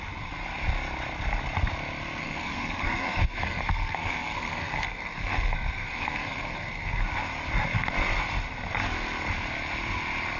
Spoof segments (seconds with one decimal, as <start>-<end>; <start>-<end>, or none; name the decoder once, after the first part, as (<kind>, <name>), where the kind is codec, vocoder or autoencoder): 2.2-7.0 (codec, SNAC)